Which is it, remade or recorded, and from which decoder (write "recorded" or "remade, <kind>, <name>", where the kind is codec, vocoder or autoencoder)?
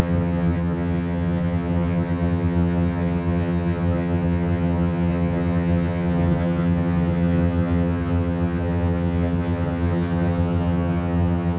remade, vocoder, HiFi-GAN